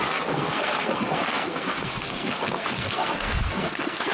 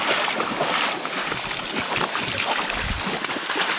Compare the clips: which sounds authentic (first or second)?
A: second